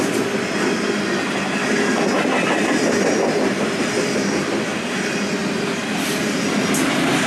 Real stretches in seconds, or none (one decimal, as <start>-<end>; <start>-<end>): 0.0-7.3